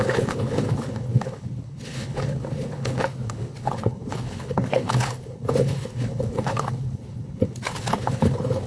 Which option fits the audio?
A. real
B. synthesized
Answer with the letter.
B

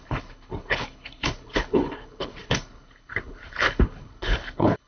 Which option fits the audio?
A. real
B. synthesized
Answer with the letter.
B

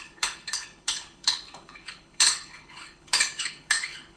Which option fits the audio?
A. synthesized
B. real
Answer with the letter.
A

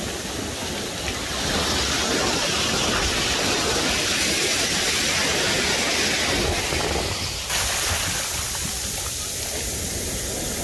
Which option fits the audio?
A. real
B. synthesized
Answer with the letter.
A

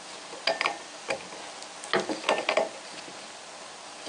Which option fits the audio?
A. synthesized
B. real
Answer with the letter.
B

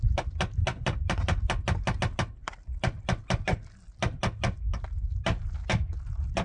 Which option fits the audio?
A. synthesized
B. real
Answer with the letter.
B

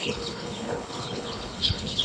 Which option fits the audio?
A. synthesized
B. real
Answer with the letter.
A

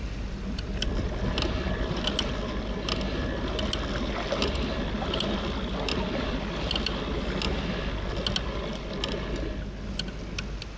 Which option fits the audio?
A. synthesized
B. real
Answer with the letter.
B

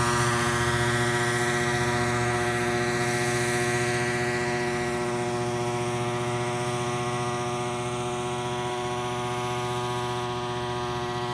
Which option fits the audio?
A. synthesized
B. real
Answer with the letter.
B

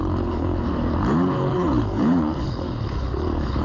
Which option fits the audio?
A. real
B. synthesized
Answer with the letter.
B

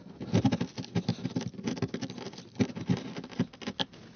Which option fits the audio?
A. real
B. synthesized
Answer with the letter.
A